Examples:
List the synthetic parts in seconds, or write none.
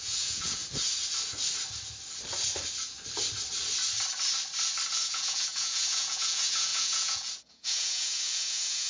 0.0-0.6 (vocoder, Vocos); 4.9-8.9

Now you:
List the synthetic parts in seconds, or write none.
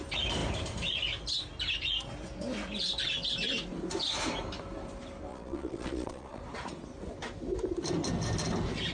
5.3-6.4 (vocoder, Vocos)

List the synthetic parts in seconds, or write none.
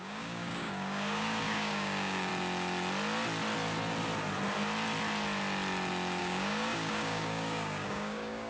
0.0-2.3 (codec, DAC); 6.2-8.5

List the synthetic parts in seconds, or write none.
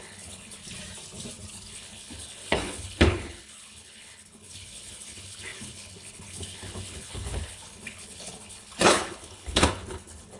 0.0-0.6 (codec, HILCodec); 1.5-10.4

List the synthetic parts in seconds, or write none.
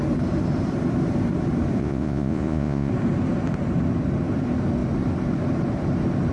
1.8-2.9 (vocoder, Vocos)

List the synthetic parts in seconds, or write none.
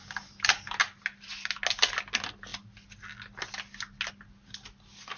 0.0-0.8 (vocoder, BigVGAN v2)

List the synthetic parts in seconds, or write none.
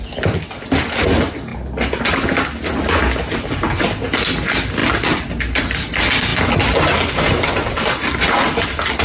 none